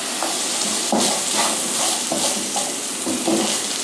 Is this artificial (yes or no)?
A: no